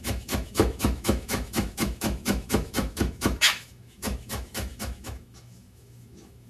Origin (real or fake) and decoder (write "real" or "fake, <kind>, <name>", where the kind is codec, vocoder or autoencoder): fake, autoencoder, DAC-VAE